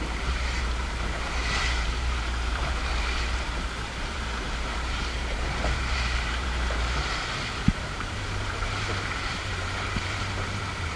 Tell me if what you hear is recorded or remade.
remade